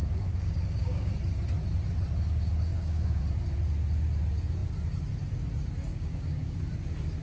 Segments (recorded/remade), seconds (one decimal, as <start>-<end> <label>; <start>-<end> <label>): 0.0-1.1 remade; 1.1-2.7 recorded; 2.7-3.2 remade; 3.2-5.9 recorded; 5.9-6.5 remade; 6.5-7.2 recorded